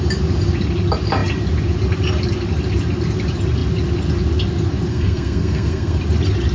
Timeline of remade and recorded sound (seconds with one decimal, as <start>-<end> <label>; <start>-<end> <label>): 0.0-4.9 recorded; 4.9-6.0 remade; 6.0-6.5 recorded